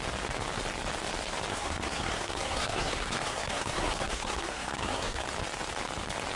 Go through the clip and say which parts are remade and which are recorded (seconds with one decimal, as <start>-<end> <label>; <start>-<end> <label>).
0.0-1.5 recorded; 1.5-5.3 remade; 5.3-6.4 recorded